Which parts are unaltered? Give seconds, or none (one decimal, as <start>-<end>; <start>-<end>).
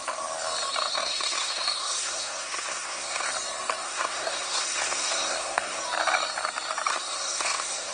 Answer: 0.0-0.9; 3.3-3.8; 5.8-6.9